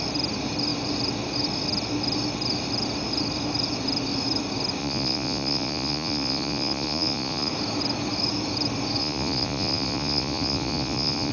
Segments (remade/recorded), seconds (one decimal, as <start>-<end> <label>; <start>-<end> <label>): 0.0-4.8 recorded; 4.8-7.5 remade; 7.5-9.0 recorded; 9.0-11.3 remade